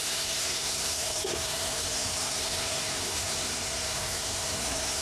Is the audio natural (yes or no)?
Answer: no